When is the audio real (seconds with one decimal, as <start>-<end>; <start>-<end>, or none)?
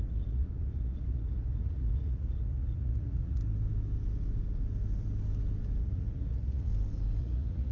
3.4-5.8; 6.7-7.2